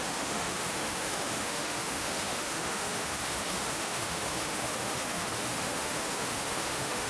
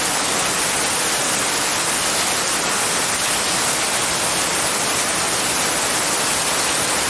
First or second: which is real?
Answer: second